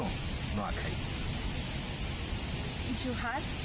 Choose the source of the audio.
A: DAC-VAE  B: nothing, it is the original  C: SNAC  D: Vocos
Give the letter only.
B